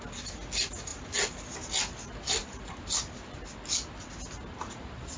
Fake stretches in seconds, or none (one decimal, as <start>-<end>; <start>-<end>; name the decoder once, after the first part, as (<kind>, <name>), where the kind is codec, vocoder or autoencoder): none